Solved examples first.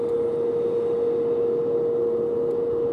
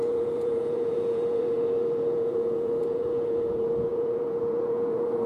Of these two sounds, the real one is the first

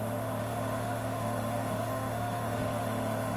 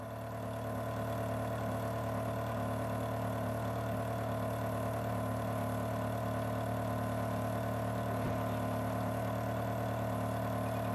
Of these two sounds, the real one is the second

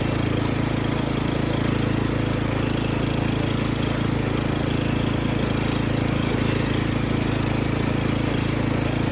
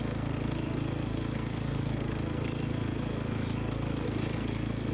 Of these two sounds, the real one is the first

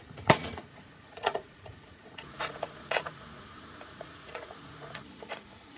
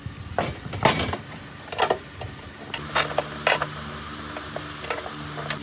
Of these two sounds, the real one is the second